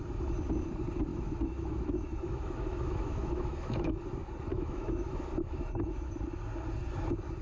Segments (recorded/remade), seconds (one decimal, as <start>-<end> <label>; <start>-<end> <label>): 0.0-1.1 recorded; 1.1-4.0 remade; 4.0-4.5 recorded; 4.5-6.1 remade; 6.1-7.4 recorded